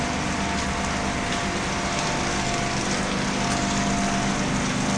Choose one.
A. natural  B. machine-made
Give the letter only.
A